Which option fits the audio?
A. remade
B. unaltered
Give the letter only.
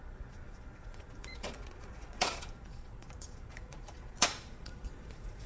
A